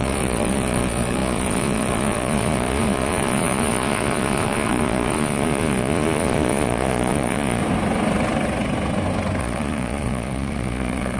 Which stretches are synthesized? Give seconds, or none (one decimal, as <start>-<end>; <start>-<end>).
0.0-7.6; 9.4-11.2